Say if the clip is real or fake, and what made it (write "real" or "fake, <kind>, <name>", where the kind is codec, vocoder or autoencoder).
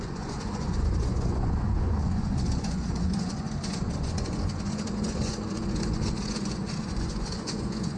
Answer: fake, vocoder, Vocos